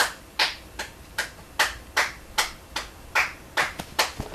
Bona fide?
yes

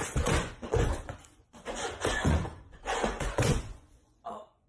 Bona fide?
no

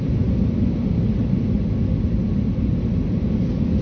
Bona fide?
yes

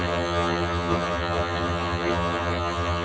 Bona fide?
no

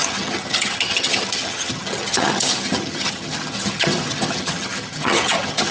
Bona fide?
no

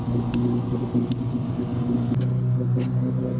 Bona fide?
yes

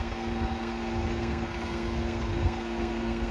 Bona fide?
no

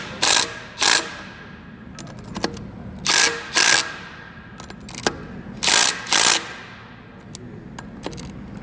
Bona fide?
yes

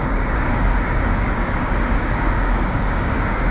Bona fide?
no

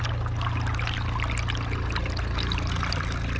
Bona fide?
yes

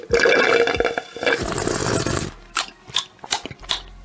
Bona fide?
yes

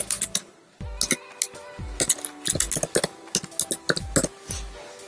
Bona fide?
yes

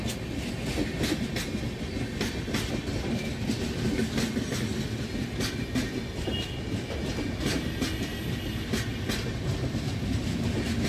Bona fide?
yes